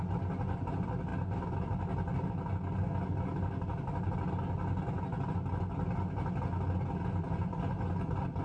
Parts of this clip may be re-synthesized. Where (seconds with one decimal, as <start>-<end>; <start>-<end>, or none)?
none